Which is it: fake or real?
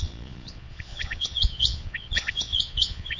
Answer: fake